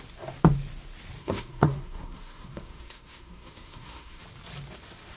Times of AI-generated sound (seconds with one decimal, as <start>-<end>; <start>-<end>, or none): 1.2-4.2